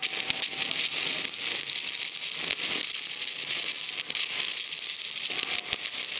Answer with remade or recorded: recorded